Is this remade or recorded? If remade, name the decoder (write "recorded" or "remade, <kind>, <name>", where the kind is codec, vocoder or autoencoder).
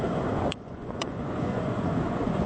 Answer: remade, vocoder, Vocos